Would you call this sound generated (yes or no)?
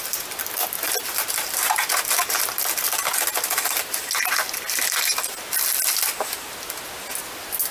no